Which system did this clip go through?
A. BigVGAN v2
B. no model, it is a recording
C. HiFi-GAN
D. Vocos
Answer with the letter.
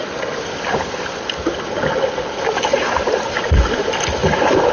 B